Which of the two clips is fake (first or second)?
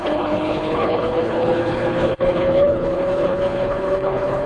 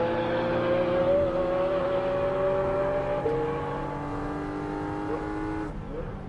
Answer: first